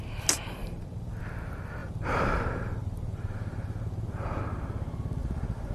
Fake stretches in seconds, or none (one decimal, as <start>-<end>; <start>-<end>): 0.6-1.2; 1.8-4.4; 5.2-5.7